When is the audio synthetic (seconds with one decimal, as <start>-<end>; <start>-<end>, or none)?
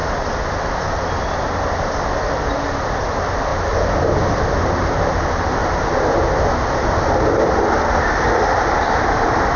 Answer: 3.5-4.0; 5.6-9.2